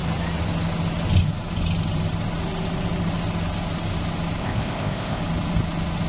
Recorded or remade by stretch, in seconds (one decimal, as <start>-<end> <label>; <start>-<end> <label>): 0.0-4.4 recorded; 4.4-5.2 remade; 5.2-6.1 recorded